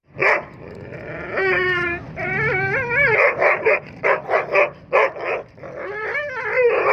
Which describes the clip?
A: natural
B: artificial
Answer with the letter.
B